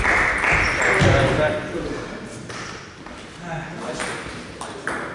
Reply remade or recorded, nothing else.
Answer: recorded